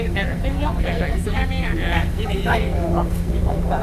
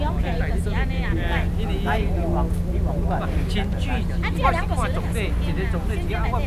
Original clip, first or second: second